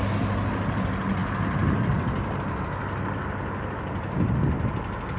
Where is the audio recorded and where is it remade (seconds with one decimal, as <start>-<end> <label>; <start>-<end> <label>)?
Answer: 0.0-5.2 recorded